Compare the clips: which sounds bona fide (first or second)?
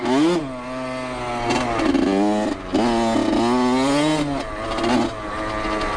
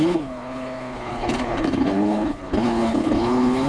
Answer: first